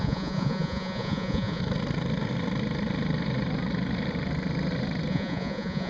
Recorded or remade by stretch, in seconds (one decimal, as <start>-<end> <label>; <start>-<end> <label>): 0.0-1.6 remade; 1.6-5.1 recorded; 5.1-5.9 remade